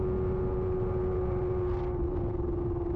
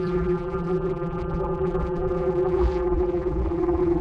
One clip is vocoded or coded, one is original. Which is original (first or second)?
first